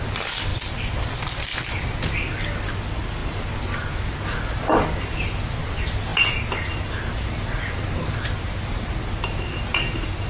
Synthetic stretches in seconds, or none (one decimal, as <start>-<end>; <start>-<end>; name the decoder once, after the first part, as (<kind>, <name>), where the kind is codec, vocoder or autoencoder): 0.5-2.1 (vocoder, BigVGAN v2); 3.2-3.9